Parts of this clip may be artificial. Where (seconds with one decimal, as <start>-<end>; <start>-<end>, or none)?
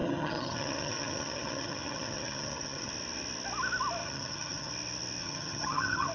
0.0-2.9; 4.0-4.7; 5.2-6.1